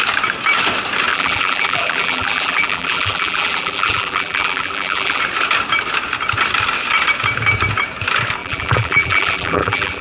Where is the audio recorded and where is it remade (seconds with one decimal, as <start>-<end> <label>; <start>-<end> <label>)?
0.0-1.1 recorded; 1.1-5.2 remade; 5.2-8.4 recorded; 8.4-10.0 remade